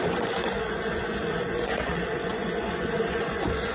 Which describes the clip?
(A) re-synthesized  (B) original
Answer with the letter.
A